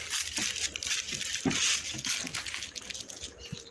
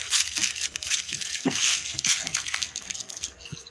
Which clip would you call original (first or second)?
first